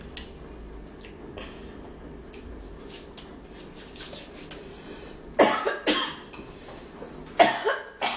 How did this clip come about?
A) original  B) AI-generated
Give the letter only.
A